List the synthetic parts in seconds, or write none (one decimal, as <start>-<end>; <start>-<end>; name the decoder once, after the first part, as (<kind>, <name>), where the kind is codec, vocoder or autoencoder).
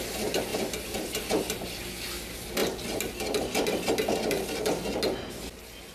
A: none